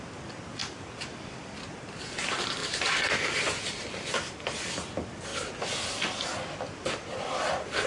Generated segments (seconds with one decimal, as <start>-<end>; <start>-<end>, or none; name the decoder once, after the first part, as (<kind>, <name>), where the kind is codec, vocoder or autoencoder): none